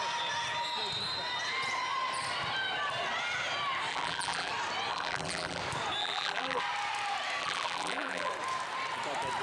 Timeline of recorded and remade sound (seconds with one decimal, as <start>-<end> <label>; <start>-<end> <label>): 0.0-3.9 recorded; 3.9-4.5 remade; 4.5-4.9 recorded; 4.9-5.6 remade; 5.6-6.0 recorded; 6.0-6.6 remade; 6.6-7.4 recorded; 7.4-8.3 remade; 8.3-9.4 recorded